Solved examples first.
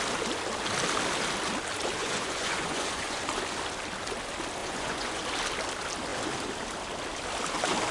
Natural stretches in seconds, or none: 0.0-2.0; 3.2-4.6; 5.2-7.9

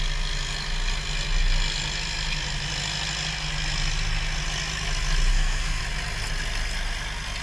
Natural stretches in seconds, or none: 0.0-5.3; 5.8-7.4

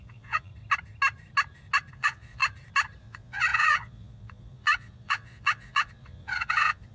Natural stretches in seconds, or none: 0.5-1.9; 2.4-3.0

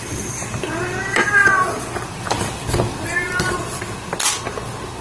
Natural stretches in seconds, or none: 0.0-2.9; 3.5-5.0

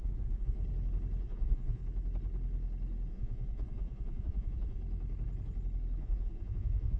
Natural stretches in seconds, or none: 0.6-1.2; 1.8-3.1; 4.8-6.0

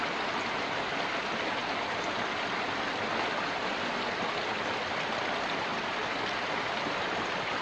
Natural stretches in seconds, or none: 1.6-4.9; 5.7-6.8

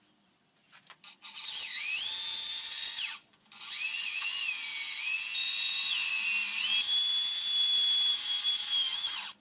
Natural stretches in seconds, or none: 0.0-2.5; 6.1-9.4